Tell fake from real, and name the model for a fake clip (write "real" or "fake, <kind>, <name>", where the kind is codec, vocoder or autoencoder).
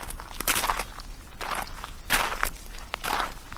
real